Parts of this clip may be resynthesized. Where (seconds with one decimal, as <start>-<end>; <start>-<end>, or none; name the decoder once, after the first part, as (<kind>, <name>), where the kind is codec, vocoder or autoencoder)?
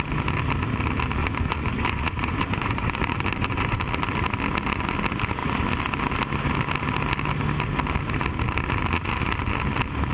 1.2-3.8 (vocoder, Vocos)